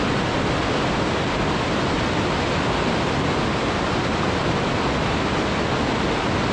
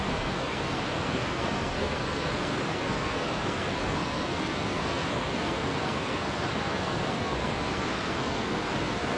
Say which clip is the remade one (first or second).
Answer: second